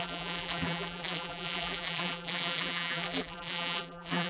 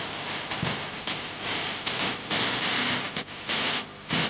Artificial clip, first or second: first